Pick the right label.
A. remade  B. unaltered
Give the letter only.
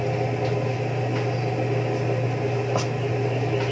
B